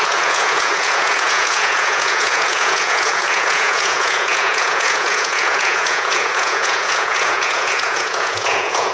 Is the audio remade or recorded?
remade